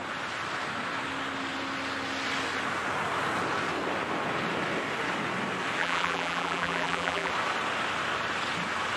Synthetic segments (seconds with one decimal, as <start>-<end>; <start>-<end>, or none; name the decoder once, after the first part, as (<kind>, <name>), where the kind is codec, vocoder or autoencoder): 5.8-7.3 (vocoder, BigVGAN v2)